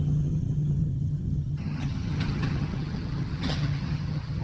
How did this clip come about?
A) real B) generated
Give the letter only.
B